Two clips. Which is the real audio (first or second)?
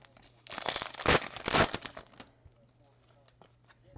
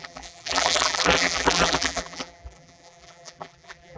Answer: first